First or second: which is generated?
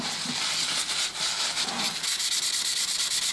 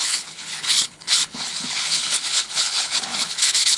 second